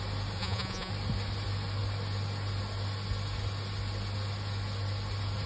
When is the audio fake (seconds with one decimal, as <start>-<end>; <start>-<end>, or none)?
0.4-0.9